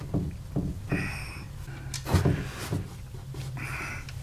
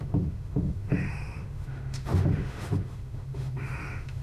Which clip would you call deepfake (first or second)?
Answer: second